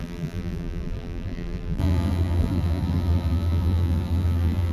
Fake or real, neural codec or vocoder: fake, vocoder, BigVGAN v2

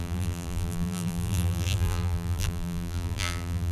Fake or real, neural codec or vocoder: fake, vocoder, BigVGAN v2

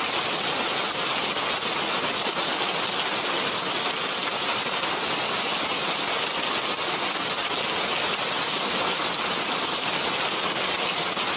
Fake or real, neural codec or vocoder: real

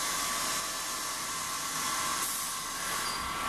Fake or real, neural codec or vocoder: real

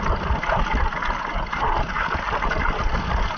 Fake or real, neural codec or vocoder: real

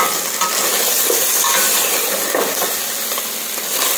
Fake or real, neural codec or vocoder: real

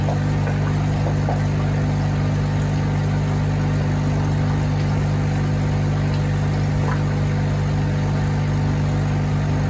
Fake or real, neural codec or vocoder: real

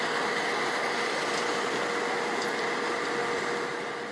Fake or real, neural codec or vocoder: real